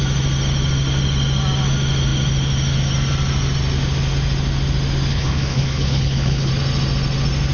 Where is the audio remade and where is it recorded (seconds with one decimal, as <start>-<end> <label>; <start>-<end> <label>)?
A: 0.0-5.1 recorded; 5.1-6.5 remade; 6.5-7.5 recorded